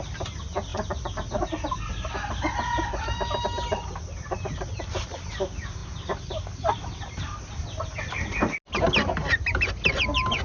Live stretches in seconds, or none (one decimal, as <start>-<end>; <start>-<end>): 0.0-10.4